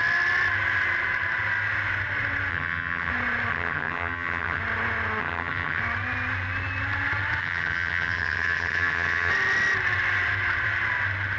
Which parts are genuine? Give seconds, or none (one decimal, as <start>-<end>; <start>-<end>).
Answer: 0.0-2.5; 3.1-3.5; 4.6-5.2; 5.8-7.4; 9.3-11.4